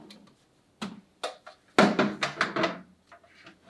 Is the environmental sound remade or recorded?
recorded